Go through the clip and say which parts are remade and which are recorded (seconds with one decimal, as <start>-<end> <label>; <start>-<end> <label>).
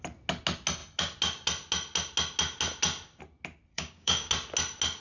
0.0-3.7 recorded; 3.7-4.3 remade; 4.3-5.0 recorded